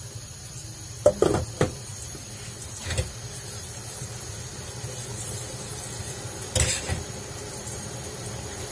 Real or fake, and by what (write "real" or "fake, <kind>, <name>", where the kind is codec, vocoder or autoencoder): real